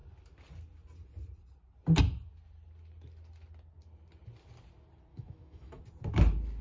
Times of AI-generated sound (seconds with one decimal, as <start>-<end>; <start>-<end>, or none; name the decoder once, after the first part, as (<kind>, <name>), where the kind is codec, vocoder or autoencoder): 5.1-5.8 (autoencoder, DAC-VAE)